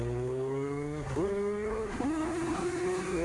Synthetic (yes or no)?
yes